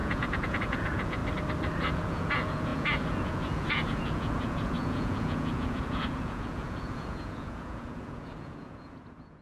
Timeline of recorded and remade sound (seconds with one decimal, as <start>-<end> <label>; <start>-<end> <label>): 0.0-1.2 remade; 1.2-1.9 recorded; 1.9-9.4 remade